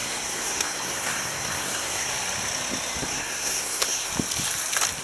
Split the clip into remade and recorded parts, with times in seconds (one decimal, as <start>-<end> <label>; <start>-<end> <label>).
0.0-2.1 remade; 2.1-3.1 recorded; 3.1-4.1 remade; 4.1-5.0 recorded